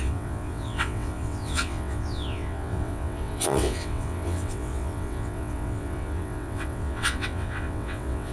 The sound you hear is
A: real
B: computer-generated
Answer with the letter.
B